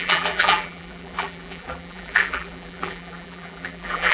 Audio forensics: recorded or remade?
remade